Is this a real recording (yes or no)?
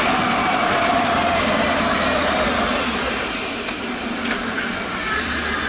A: yes